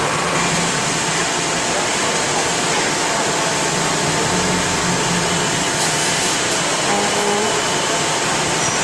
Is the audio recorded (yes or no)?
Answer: yes